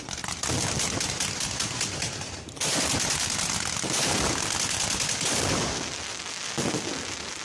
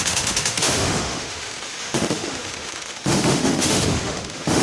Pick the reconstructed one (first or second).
second